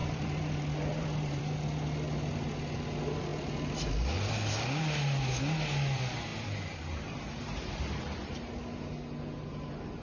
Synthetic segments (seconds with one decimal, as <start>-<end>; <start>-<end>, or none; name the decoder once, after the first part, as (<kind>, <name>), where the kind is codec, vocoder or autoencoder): 0.0-1.4 (vocoder, BigVGAN v2); 6.3-8.5